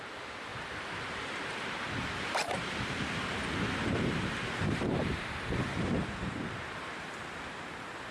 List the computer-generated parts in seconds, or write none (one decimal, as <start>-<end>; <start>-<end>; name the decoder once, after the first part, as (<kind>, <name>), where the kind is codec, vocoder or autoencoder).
0.0-0.5 (vocoder, BigVGAN v2); 1.0-8.1